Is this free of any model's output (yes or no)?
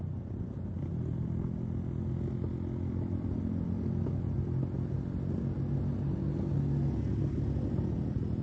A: yes